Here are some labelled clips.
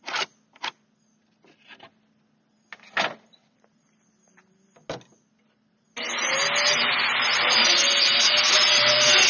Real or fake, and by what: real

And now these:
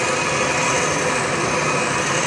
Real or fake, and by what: real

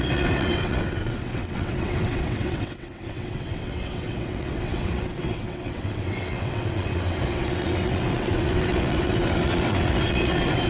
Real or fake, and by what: fake, vocoder, WaveNeXt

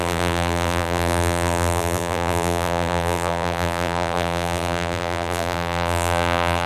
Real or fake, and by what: fake, vocoder, BigVGAN v2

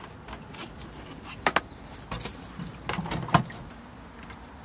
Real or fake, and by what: real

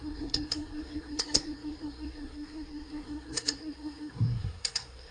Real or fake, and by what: fake, codec, SNAC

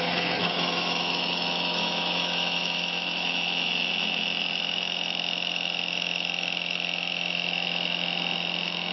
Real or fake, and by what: fake, autoencoder, DAC-VAE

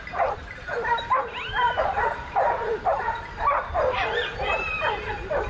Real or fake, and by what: fake, vocoder, BigVGAN v2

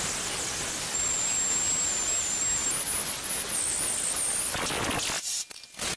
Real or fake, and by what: real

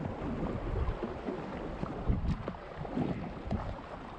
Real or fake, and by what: real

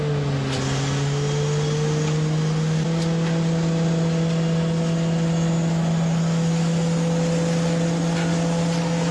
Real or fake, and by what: real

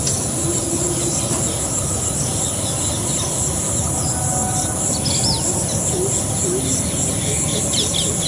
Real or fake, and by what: real